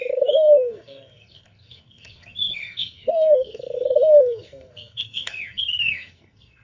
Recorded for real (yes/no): no